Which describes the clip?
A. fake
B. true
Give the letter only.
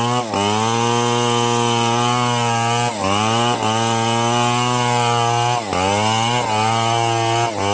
B